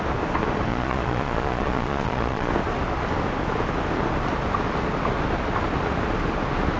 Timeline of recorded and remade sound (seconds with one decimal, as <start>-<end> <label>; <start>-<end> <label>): 0.0-0.7 recorded; 0.7-2.5 remade; 2.5-6.8 recorded